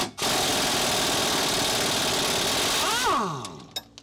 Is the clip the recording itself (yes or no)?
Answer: yes